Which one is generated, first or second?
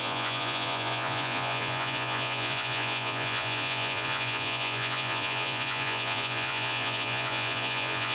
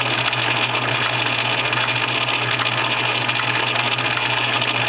first